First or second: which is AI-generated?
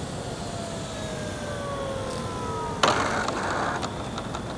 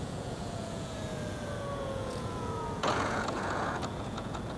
second